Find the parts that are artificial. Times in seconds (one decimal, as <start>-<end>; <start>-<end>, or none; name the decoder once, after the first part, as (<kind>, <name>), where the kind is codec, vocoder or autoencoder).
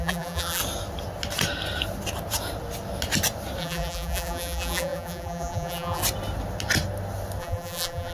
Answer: 0.0-0.6 (vocoder, BigVGAN v2); 3.6-6.0; 7.4-8.1